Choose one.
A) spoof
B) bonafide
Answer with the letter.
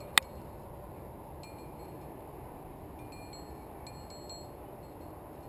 B